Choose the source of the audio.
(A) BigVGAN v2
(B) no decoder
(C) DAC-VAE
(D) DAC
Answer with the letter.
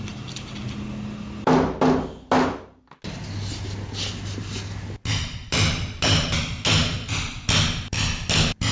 B